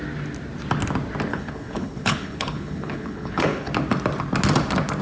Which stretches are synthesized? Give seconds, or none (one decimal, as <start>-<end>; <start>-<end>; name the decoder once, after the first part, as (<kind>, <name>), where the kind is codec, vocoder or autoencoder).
1.3-3.7 (codec, HILCodec)